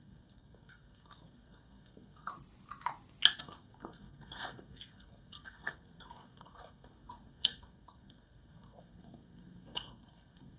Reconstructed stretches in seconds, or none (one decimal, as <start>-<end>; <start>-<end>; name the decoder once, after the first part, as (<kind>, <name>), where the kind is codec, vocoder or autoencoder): 0.0-2.3 (codec, SNAC); 3.4-10.6